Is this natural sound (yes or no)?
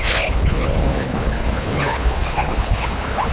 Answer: no